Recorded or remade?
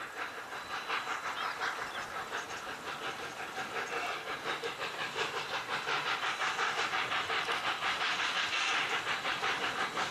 recorded